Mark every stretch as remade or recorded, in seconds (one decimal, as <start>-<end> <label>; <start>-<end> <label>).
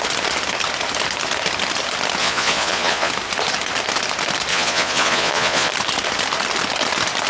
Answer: 0.0-2.2 recorded; 2.2-3.1 remade; 3.1-4.5 recorded; 4.5-5.7 remade; 5.7-7.3 recorded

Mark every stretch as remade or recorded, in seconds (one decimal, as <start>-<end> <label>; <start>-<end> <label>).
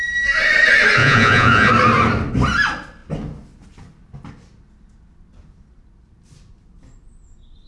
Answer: 0.0-1.0 recorded; 1.0-1.7 remade; 1.7-7.7 recorded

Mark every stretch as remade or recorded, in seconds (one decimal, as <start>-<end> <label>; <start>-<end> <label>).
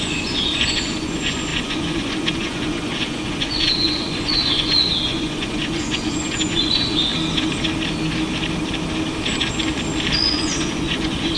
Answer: 0.0-7.1 remade; 7.1-10.2 recorded; 10.2-11.4 remade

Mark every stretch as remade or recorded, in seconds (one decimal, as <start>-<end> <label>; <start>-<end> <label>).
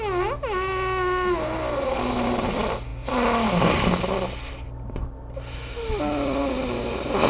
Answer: 0.0-7.3 recorded